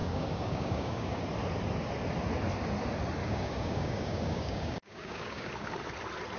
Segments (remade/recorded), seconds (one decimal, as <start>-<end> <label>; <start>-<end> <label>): 0.0-1.2 remade; 1.2-3.2 recorded; 3.2-5.5 remade; 5.5-6.4 recorded